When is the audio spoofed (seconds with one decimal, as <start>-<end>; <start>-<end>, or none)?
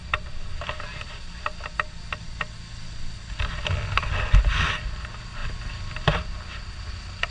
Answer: none